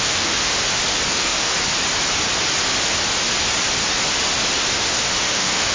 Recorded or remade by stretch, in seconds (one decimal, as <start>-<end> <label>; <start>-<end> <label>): 0.0-0.5 remade; 0.5-1.1 recorded; 1.1-1.5 remade; 1.5-4.7 recorded; 4.7-5.7 remade